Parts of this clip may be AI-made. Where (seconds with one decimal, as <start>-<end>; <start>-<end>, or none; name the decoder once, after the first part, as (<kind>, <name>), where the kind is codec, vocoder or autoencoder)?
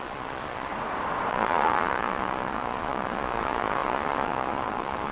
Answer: 0.0-0.7 (vocoder, Vocos); 1.3-5.1